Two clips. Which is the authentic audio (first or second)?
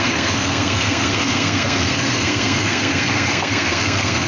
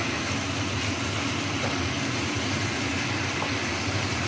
second